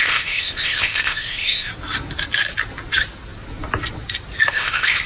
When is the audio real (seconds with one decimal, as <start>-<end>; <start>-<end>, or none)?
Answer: 1.7-4.5